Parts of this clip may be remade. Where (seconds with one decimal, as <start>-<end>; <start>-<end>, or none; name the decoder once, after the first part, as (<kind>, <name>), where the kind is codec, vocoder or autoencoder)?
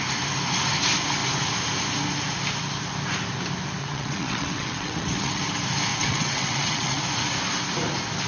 3.8-5.4 (vocoder, WaveNeXt); 5.9-7.0